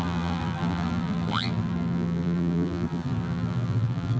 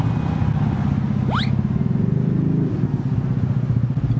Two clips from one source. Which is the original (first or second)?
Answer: second